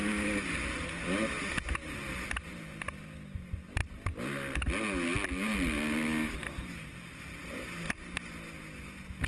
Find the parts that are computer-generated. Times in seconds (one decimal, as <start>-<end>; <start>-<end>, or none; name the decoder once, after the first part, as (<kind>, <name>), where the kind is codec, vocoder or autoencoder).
none